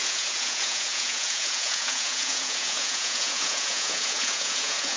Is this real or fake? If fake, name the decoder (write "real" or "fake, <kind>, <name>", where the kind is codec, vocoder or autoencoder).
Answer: fake, vocoder, Vocos